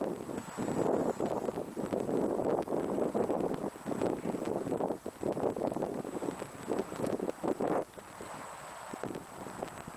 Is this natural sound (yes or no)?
yes